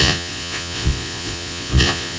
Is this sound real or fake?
fake